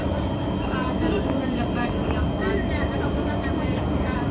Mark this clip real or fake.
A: fake